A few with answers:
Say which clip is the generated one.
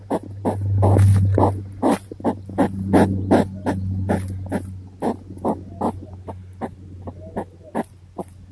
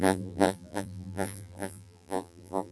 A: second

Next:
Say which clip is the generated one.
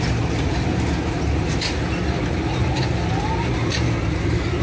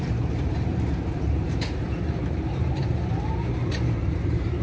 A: second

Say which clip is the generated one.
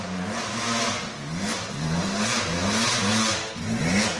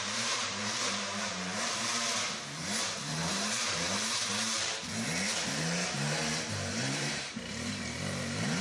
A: second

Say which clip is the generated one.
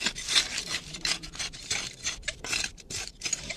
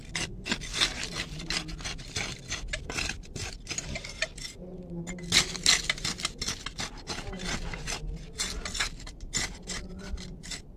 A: first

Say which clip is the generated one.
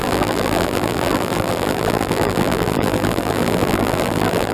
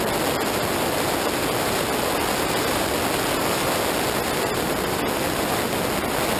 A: first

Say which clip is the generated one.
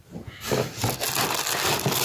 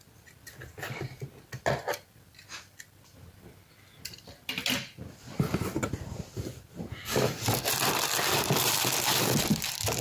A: second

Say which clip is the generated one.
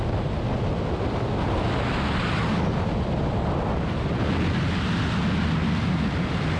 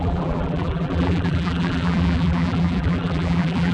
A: second